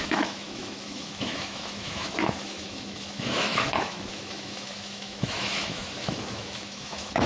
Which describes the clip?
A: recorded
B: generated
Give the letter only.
B